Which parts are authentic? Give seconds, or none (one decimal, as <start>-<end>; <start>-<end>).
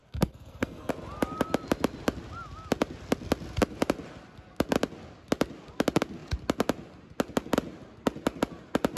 0.9-9.0